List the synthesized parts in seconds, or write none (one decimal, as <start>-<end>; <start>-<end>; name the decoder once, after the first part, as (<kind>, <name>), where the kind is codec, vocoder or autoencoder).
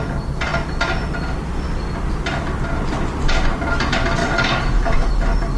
4.2-5.1 (codec, DAC)